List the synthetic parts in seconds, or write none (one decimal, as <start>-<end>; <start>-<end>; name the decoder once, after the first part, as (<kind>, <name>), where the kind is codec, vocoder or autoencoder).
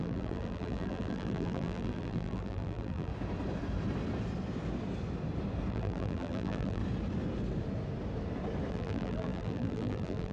0.0-3.1 (vocoder, BigVGAN v2); 5.7-6.8; 8.7-10.3